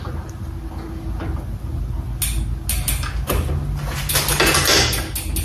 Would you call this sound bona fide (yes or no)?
yes